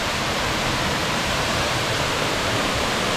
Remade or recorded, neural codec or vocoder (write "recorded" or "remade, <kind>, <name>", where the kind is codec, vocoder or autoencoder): remade, vocoder, BigVGAN v2